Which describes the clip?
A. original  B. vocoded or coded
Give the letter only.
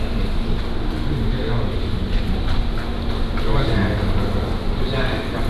A